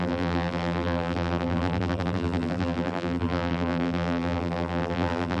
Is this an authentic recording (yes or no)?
no